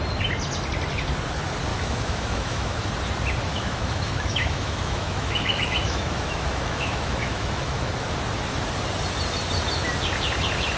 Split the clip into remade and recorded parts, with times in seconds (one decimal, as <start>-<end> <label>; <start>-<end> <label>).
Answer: 0.0-1.7 recorded; 1.7-2.9 remade; 2.9-3.5 recorded; 3.5-7.9 remade; 7.9-10.8 recorded